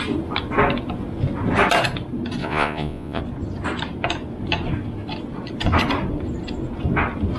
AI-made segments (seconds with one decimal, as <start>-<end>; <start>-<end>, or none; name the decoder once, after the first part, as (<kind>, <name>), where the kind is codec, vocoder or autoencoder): 2.4-3.2 (vocoder, Vocos)